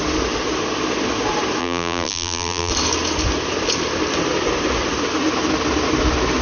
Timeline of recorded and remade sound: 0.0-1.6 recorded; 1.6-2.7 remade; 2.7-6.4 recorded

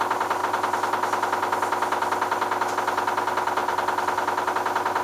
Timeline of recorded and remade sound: 0.0-5.0 recorded

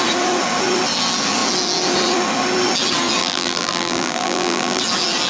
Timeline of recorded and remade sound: 0.0-3.2 recorded; 3.2-4.8 remade; 4.8-5.3 recorded

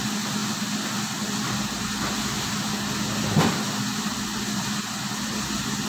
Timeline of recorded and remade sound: 0.0-3.9 recorded; 3.9-5.4 remade; 5.4-5.9 recorded

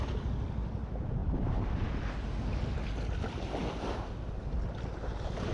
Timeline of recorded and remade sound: 0.0-3.6 recorded; 3.6-4.1 remade; 4.1-5.5 recorded